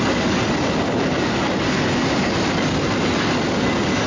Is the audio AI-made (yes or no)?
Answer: no